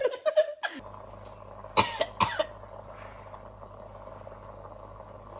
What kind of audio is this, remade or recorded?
recorded